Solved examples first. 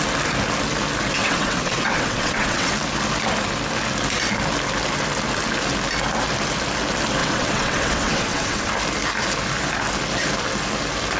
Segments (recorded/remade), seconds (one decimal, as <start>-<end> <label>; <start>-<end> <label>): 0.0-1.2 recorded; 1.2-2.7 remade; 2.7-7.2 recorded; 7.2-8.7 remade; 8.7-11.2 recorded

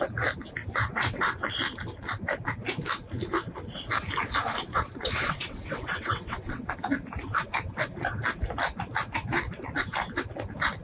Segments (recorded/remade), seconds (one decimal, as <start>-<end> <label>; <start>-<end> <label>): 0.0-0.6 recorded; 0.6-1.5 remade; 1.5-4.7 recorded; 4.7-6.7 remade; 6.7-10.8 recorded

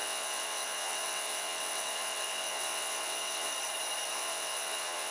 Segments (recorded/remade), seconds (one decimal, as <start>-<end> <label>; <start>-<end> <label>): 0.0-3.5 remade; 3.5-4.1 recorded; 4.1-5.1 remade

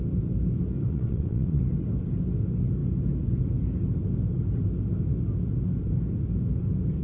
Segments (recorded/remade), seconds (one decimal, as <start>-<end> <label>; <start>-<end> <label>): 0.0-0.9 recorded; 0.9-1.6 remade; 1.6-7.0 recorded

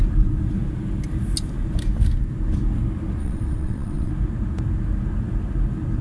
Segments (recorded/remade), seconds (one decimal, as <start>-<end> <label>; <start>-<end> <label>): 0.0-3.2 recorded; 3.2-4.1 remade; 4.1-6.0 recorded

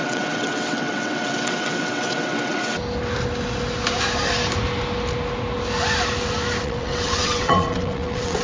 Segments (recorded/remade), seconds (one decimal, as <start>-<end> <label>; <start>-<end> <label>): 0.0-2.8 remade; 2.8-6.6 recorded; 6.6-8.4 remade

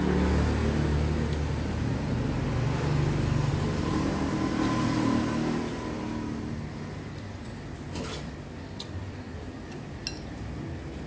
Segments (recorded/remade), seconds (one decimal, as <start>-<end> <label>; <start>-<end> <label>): 0.0-11.1 recorded